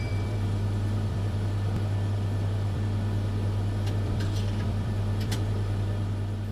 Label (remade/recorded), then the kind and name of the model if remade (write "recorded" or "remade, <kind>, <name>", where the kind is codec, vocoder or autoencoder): remade, vocoder, BigVGAN v2